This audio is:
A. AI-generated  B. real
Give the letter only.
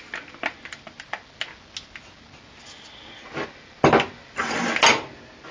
B